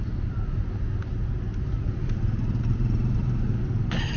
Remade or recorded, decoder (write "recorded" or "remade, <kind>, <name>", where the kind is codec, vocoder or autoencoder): recorded